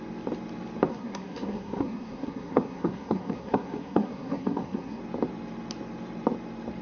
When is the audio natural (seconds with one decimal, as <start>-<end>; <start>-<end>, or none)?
0.0-0.9; 5.0-6.8